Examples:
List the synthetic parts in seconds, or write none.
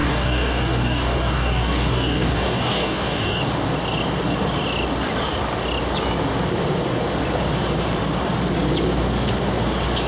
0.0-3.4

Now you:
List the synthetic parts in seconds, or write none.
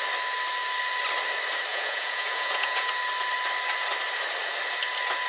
1.7-2.9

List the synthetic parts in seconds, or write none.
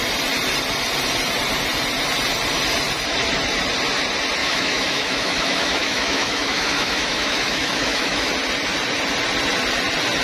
4.4-8.3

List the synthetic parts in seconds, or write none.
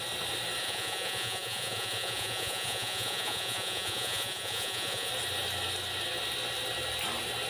0.6-5.1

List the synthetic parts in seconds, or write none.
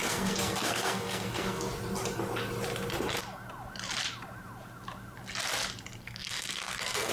0.0-1.7; 6.0-7.1